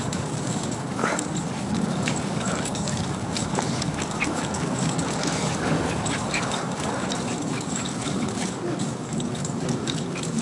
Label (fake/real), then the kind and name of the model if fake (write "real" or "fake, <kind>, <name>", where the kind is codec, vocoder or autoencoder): fake, codec, DAC